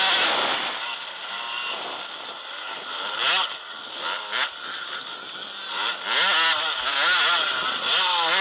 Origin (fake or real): real